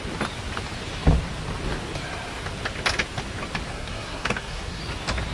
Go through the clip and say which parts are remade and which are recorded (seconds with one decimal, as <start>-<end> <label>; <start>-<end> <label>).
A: 0.0-3.7 recorded; 3.7-4.8 remade; 4.8-5.3 recorded